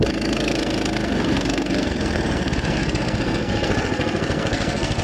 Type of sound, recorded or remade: remade